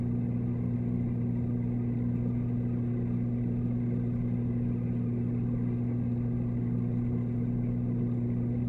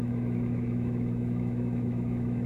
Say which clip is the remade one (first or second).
second